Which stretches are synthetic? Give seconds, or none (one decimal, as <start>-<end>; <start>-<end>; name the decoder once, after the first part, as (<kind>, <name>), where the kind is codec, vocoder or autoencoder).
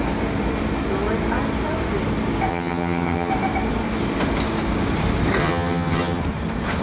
2.5-3.3 (vocoder, HiFi-GAN); 5.4-6.2